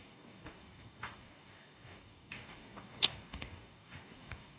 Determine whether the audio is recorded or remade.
remade